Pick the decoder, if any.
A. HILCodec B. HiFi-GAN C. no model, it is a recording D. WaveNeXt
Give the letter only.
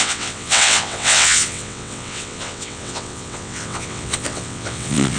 D